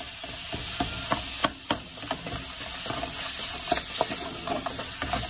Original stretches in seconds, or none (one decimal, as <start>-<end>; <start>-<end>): 0.0-5.3